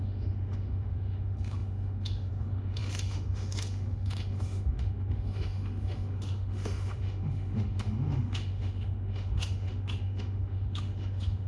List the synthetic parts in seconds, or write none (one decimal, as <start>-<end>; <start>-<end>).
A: 0.0-11.5